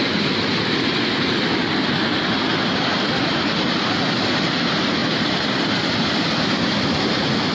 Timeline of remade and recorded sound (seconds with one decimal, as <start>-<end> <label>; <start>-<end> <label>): 0.0-2.5 recorded; 2.5-3.9 remade; 3.9-5.0 recorded; 5.0-6.9 remade; 6.9-7.5 recorded